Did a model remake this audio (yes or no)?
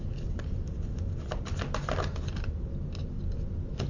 no